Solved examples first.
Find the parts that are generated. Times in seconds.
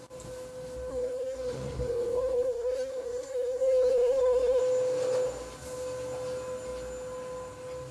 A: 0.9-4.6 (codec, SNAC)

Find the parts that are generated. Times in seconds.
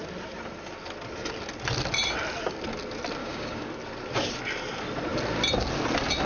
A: 3.2-3.7 (codec, DAC)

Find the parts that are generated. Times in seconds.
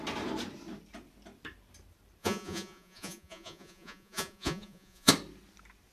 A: 2.2-5.1 (vocoder, Vocos)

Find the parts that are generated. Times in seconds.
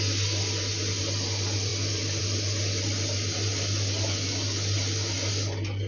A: none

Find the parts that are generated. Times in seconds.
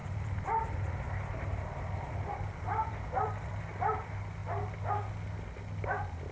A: 0.0-3.6 (vocoder, BigVGAN v2)